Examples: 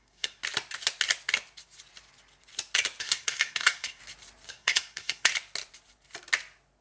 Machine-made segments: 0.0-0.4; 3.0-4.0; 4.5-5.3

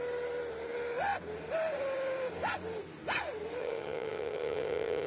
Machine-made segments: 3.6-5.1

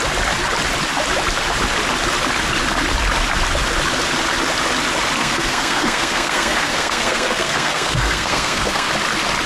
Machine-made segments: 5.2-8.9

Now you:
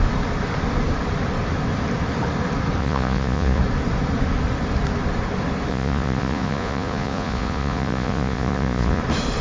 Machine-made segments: 2.8-3.6; 5.7-9.0

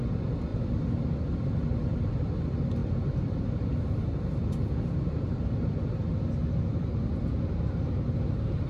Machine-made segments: 0.5-2.1; 2.8-6.0; 6.4-8.7